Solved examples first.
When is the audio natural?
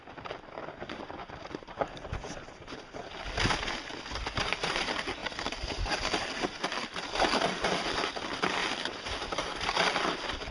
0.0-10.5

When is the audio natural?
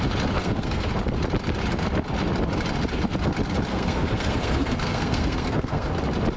0.0-0.4; 0.9-3.7; 5.9-6.4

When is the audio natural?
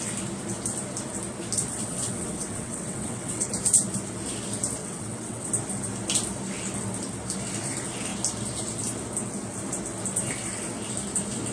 0.0-1.8; 3.5-4.8; 5.5-11.5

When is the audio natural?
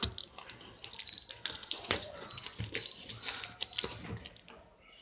0.0-1.6; 2.6-5.0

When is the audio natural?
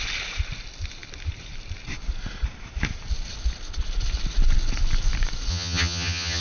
0.0-5.5